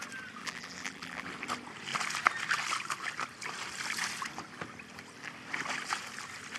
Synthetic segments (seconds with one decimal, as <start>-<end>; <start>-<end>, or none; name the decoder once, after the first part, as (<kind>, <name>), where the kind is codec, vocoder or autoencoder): 0.4-1.3 (vocoder, BigVGAN v2)